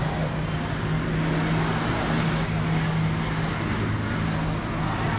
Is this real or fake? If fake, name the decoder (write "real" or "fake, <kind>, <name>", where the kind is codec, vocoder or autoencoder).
real